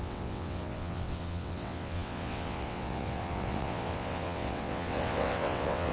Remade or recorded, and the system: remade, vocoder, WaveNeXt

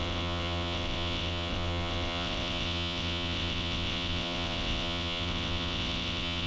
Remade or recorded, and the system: remade, vocoder, WaveNeXt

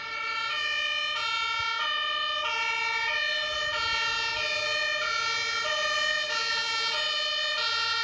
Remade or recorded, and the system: recorded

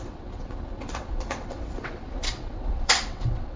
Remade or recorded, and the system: remade, vocoder, WaveNeXt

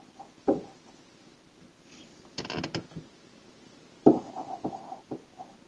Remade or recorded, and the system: recorded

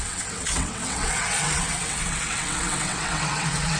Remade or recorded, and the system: remade, vocoder, WaveNeXt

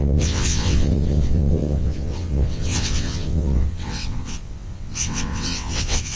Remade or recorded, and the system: remade, vocoder, WaveNeXt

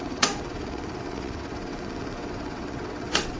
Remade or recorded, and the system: remade, vocoder, WaveNeXt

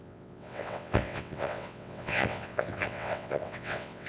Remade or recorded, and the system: remade, vocoder, WaveNeXt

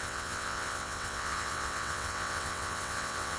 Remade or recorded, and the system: remade, vocoder, WaveNeXt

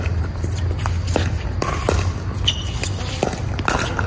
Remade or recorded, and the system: recorded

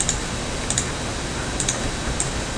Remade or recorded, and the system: recorded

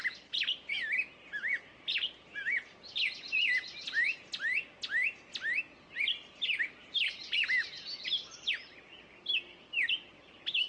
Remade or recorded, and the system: recorded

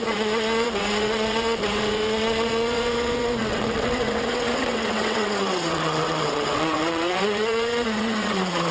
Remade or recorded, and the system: remade, vocoder, WaveNeXt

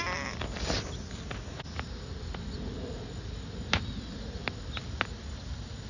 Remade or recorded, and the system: recorded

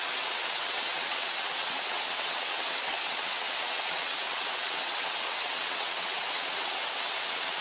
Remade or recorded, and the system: remade, vocoder, WaveNeXt